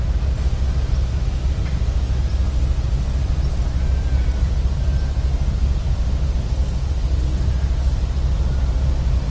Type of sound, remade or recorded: recorded